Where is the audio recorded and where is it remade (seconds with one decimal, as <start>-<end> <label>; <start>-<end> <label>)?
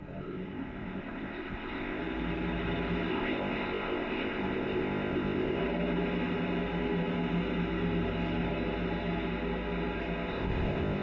0.0-2.0 remade; 2.0-3.1 recorded; 3.1-5.6 remade; 5.6-10.3 recorded; 10.3-11.0 remade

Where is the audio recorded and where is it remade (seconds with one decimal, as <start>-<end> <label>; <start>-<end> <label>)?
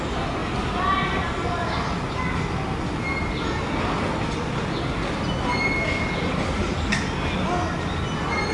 0.0-8.5 recorded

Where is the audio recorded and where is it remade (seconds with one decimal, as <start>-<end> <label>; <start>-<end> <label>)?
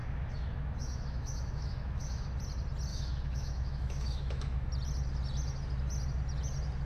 0.0-2.3 remade; 2.3-2.9 recorded; 2.9-4.7 remade; 4.7-6.8 recorded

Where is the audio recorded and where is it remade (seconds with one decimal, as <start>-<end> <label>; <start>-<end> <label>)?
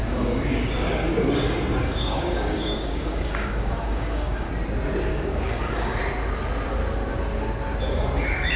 0.0-4.5 remade; 4.5-5.1 recorded; 5.1-6.0 remade; 6.0-8.6 recorded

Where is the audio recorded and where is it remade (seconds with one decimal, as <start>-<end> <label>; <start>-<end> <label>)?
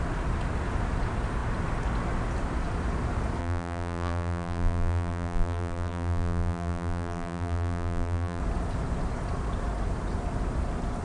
0.0-3.4 recorded; 3.4-8.4 remade; 8.4-11.0 recorded